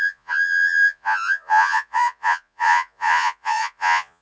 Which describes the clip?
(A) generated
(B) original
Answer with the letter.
A